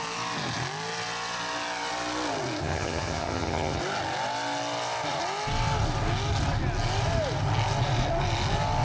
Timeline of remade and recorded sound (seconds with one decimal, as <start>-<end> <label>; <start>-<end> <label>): 0.0-2.6 recorded; 2.6-3.8 remade; 3.8-8.8 recorded